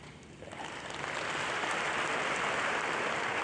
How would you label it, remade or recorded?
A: recorded